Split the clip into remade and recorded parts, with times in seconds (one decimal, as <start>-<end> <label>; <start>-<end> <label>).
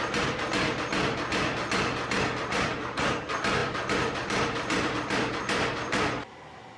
0.0-3.6 recorded; 3.6-5.2 remade; 5.2-6.8 recorded